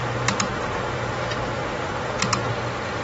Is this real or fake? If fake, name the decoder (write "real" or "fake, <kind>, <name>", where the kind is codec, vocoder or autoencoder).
real